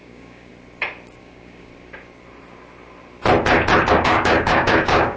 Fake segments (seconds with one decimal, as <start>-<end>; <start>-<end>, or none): 0.0-0.5; 1.2-1.7; 3.9-5.2